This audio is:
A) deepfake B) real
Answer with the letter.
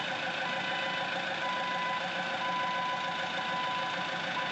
B